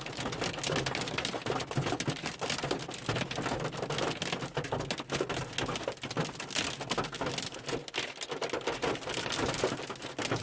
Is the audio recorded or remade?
recorded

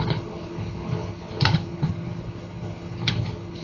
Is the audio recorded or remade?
remade